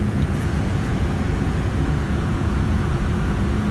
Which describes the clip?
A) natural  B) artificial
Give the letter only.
B